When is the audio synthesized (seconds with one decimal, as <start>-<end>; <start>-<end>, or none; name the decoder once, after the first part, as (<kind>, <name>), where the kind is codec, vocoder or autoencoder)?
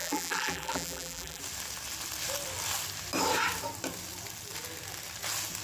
0.0-1.4 (vocoder, BigVGAN v2)